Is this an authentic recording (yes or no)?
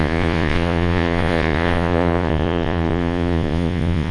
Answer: no